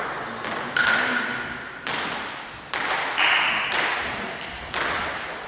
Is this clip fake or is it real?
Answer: real